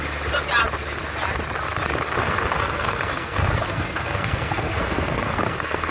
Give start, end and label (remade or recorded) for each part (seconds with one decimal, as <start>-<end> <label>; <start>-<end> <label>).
0.0-2.2 recorded; 2.2-5.9 remade